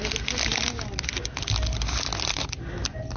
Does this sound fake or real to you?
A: real